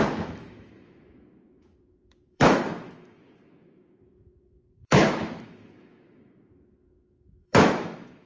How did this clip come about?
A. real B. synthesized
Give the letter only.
B